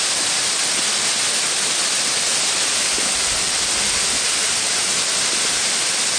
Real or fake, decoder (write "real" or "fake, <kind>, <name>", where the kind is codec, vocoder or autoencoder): real